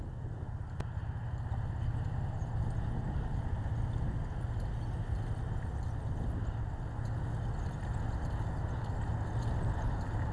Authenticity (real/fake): real